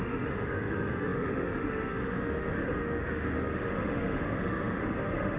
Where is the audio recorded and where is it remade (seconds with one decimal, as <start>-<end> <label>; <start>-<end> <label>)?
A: 0.0-5.4 remade